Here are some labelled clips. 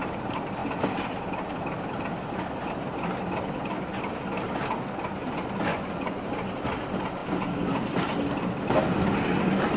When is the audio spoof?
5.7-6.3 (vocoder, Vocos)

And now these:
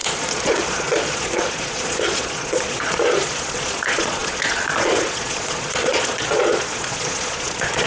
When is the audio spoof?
0.0-7.9 (vocoder, Vocos)

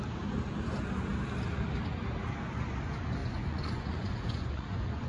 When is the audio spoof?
3.2-5.1 (vocoder, Vocos)

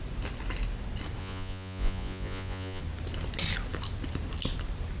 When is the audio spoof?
1.2-2.8 (vocoder, Vocos)

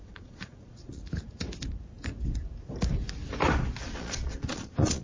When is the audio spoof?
0.0-1.0 (vocoder, Vocos); 3.8-5.0

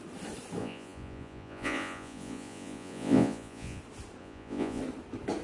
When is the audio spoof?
0.6-3.8 (vocoder, Vocos); 4.2-4.8

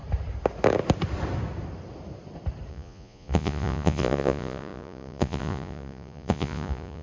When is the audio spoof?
2.7-7.0 (vocoder, Vocos)